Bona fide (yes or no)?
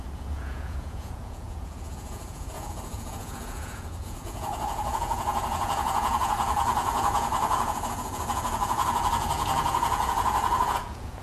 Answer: no